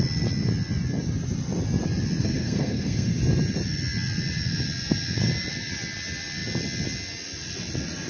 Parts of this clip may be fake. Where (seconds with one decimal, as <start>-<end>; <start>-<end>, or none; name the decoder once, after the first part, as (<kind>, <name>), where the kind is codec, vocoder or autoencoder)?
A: 2.2-3.1 (codec, SNAC)